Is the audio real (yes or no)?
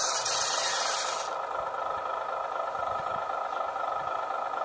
yes